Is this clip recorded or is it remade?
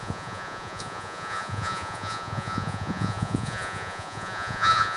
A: remade